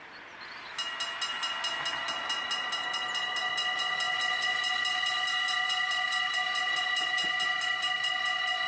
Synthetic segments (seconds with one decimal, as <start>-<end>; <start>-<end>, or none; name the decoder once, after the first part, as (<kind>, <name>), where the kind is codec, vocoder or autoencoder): none